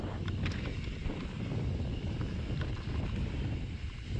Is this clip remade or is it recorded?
recorded